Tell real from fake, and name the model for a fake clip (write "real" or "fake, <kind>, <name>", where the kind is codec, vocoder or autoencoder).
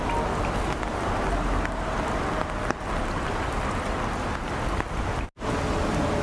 real